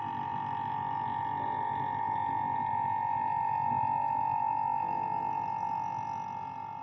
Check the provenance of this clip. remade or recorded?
recorded